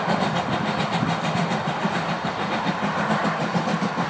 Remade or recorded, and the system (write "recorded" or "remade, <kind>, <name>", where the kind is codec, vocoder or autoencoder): recorded